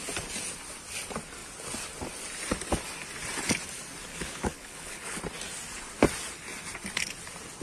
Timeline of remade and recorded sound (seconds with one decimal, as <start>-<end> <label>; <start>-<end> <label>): 0.0-4.1 recorded; 4.1-5.2 remade; 5.2-7.6 recorded